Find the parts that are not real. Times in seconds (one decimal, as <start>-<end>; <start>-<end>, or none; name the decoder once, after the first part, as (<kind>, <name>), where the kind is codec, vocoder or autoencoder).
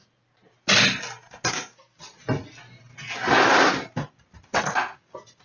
none